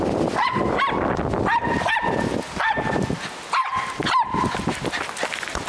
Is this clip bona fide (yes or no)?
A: yes